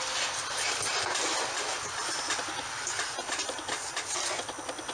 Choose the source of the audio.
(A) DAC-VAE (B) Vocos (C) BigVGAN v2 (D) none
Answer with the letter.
D